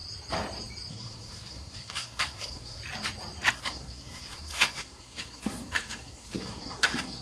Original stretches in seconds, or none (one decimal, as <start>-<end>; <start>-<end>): 0.0-0.9; 2.8-3.5